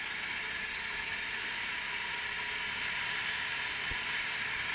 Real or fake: real